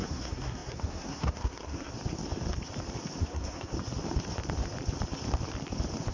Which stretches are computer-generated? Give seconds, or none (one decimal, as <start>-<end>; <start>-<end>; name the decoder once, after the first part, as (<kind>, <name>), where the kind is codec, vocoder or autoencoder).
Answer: 0.0-1.9 (codec, SNAC); 3.2-3.7